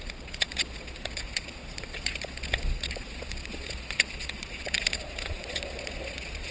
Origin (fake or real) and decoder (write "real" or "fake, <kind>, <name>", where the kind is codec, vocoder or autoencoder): fake, vocoder, Vocos